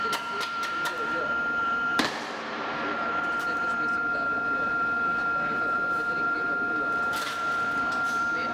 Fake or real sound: fake